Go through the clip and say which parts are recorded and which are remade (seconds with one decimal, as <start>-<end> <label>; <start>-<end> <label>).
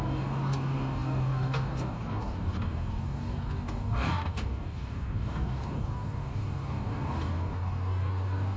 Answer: 0.0-8.6 remade